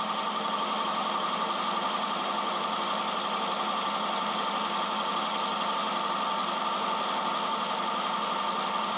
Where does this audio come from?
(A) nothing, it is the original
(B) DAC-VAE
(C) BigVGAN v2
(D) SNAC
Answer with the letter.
A